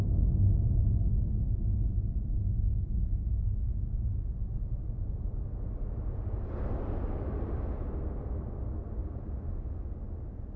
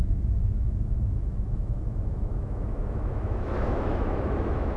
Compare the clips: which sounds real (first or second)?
first